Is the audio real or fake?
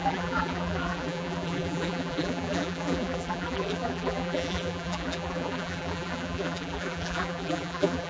fake